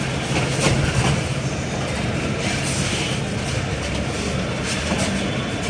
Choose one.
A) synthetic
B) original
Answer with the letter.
B